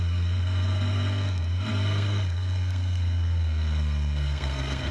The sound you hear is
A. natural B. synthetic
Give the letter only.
B